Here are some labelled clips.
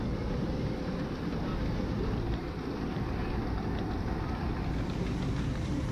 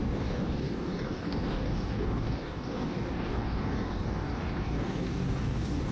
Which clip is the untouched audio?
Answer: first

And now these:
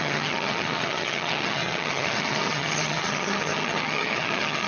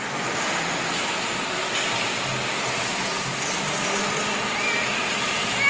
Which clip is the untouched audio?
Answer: second